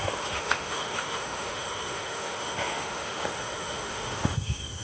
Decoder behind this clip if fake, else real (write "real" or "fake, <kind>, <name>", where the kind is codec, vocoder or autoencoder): fake, autoencoder, DAC-VAE